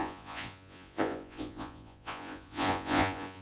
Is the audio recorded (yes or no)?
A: no